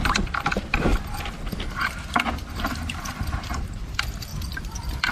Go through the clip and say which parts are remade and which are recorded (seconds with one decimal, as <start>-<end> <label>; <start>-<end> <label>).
0.0-0.9 remade; 0.9-3.5 recorded; 3.5-4.3 remade; 4.3-5.1 recorded